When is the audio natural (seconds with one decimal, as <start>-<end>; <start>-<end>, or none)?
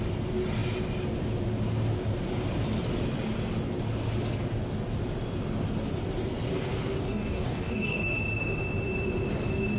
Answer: 0.0-7.0; 8.2-9.8